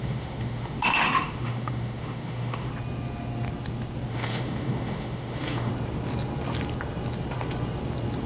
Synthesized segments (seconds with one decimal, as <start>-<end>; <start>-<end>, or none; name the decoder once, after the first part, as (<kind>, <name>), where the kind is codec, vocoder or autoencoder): 0.0-2.7 (autoencoder, DAC-VAE); 4.1-5.7